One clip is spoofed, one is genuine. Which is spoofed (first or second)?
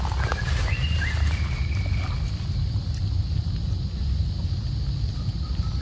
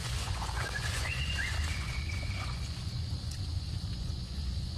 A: second